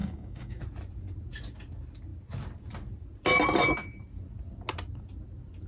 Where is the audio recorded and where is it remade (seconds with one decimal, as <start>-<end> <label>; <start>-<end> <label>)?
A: 0.0-0.6 remade; 0.6-5.7 recorded